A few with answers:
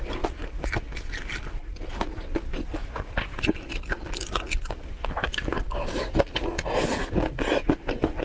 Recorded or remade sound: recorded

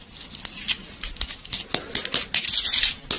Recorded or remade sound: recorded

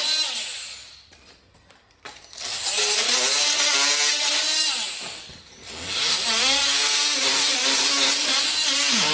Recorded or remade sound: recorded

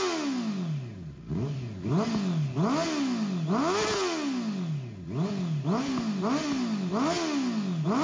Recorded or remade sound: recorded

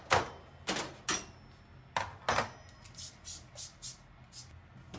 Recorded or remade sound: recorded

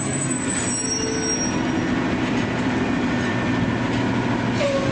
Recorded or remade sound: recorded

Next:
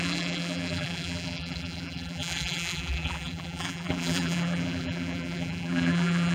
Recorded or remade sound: remade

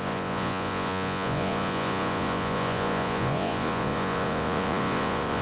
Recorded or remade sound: remade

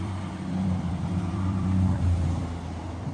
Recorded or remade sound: remade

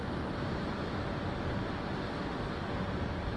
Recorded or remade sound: recorded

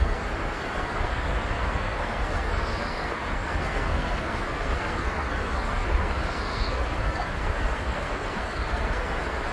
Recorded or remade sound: remade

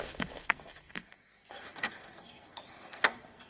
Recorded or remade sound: remade